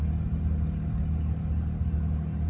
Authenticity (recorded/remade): recorded